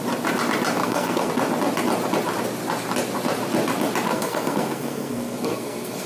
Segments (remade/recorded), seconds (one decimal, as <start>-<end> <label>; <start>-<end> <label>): 0.0-0.8 recorded; 0.8-1.3 remade; 1.3-4.1 recorded; 4.1-6.1 remade

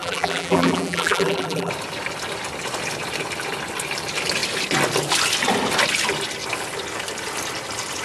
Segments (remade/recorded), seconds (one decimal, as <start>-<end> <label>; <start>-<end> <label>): 0.0-1.7 remade; 1.7-8.0 recorded

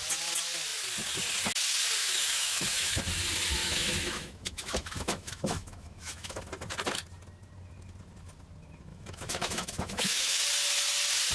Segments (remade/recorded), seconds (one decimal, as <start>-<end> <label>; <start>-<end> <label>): 0.0-2.0 recorded; 2.0-3.0 remade; 3.0-3.6 recorded; 3.6-6.4 remade; 6.4-8.9 recorded; 8.9-10.4 remade; 10.4-11.3 recorded

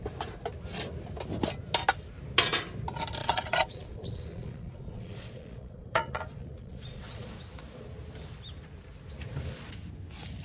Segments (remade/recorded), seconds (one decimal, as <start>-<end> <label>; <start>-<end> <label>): 0.0-3.2 recorded; 3.2-7.3 remade; 7.3-10.4 recorded

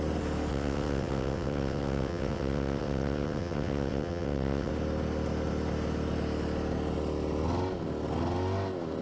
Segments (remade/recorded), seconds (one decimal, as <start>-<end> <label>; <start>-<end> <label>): 0.0-0.5 recorded; 0.5-4.7 remade; 4.7-9.0 recorded